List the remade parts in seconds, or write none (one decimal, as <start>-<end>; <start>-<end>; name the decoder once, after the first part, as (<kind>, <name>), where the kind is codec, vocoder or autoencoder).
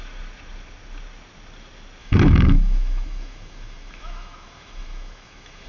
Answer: 2.0-5.7 (autoencoder, DAC-VAE)